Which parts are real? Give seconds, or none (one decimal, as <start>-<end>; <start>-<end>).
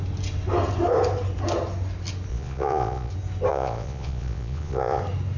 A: 0.0-2.3; 3.1-3.5; 5.0-5.4